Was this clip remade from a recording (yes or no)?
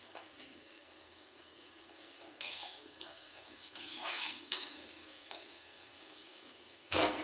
yes